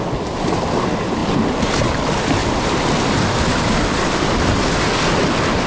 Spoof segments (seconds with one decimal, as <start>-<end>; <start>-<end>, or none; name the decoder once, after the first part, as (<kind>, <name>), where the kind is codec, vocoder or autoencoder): none